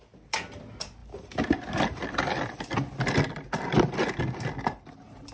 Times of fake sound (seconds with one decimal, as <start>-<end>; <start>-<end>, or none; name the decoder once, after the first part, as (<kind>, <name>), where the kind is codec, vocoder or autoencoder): none